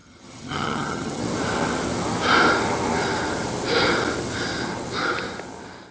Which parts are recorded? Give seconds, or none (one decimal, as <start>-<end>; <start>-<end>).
1.2-5.9